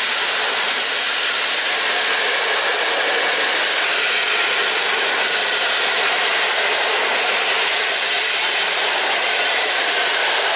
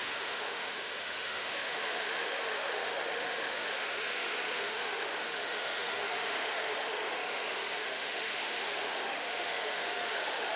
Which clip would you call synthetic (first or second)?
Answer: second